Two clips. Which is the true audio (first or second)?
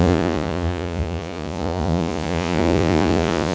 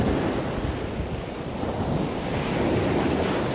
second